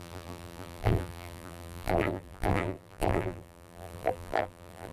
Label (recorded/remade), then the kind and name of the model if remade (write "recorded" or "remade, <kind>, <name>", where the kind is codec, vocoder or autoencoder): remade, vocoder, BigVGAN v2